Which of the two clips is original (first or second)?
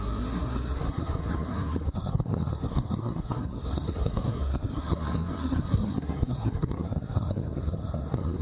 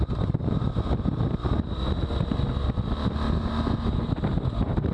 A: second